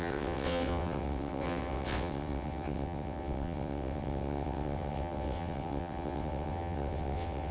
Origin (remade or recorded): remade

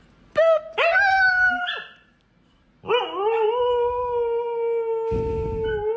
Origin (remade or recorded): recorded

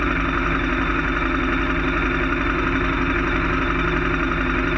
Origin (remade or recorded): recorded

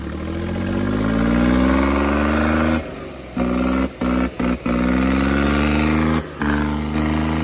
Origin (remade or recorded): recorded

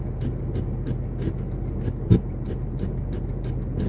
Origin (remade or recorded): recorded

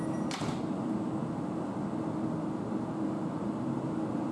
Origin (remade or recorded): recorded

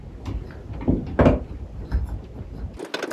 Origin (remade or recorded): recorded